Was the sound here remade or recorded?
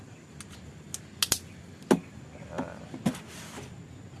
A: recorded